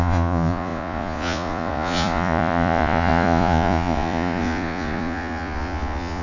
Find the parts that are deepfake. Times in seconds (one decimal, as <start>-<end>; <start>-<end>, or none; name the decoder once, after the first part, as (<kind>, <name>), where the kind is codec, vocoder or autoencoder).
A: 0.0-6.2 (vocoder, Vocos)